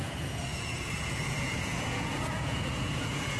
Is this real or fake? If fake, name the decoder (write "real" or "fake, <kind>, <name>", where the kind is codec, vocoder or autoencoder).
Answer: fake, vocoder, Vocos